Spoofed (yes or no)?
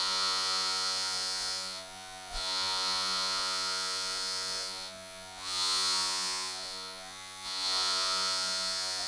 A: yes